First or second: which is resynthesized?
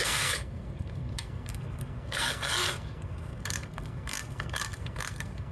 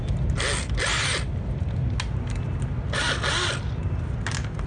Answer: first